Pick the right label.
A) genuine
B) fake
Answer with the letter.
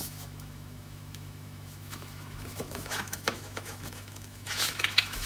B